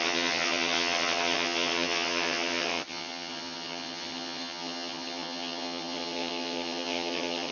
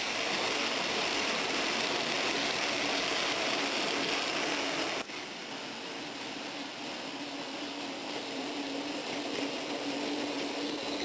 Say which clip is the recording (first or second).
second